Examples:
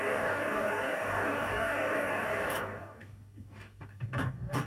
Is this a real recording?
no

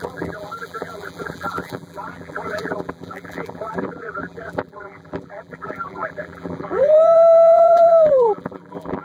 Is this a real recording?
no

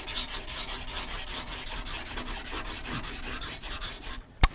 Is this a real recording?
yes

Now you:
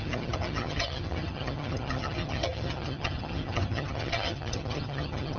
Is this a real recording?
no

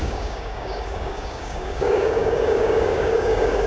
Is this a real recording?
no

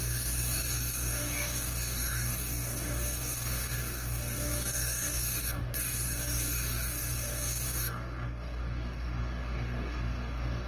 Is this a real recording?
no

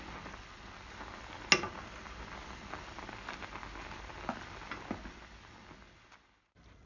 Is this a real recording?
yes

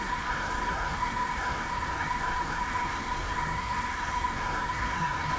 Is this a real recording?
no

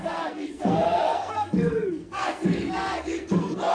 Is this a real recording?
no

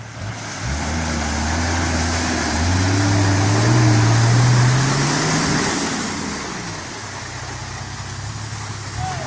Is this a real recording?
yes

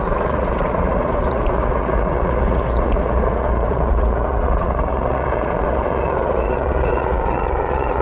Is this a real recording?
no